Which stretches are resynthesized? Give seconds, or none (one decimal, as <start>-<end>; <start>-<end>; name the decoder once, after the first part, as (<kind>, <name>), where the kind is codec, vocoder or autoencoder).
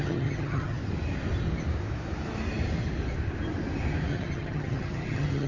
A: 0.0-0.8 (vocoder, HiFi-GAN); 4.1-5.5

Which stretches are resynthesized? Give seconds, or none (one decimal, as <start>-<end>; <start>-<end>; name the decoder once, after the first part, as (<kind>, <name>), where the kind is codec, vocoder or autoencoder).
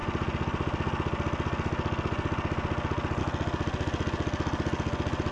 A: none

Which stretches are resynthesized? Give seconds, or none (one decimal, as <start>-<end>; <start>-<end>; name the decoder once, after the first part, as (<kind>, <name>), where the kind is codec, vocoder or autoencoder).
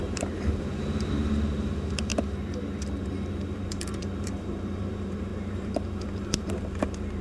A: 0.0-2.1 (vocoder, BigVGAN v2); 3.0-7.2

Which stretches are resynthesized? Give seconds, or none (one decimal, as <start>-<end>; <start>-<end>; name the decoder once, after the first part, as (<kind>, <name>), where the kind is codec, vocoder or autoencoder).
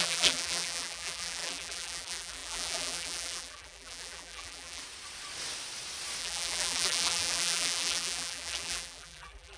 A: 0.0-4.8 (vocoder, BigVGAN v2); 6.2-9.6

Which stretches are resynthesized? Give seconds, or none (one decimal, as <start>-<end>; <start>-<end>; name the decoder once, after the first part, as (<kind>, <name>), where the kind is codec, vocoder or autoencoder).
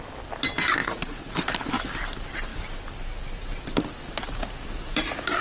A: 0.8-1.3 (vocoder, Vocos)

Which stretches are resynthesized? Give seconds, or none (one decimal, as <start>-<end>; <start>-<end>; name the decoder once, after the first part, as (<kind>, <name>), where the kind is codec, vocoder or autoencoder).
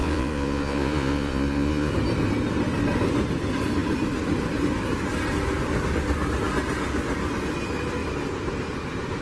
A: 0.0-1.9 (vocoder, Vocos)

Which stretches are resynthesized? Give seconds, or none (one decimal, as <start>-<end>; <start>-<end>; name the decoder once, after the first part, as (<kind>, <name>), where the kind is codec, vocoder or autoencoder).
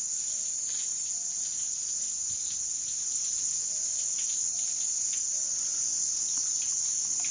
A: none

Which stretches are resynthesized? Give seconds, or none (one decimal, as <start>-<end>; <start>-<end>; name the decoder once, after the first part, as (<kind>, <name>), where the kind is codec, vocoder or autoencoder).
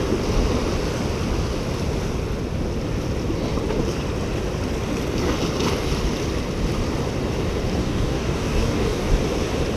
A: 7.8-9.1 (codec, DAC)